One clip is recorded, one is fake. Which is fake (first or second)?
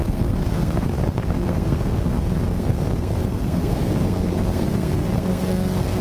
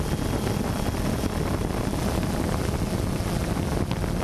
first